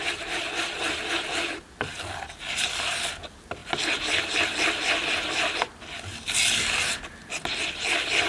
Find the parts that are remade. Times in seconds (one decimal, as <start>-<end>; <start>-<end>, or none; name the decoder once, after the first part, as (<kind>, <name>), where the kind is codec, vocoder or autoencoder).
none